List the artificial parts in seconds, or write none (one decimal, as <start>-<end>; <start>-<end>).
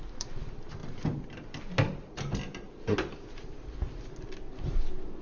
none